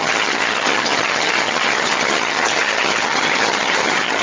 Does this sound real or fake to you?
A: fake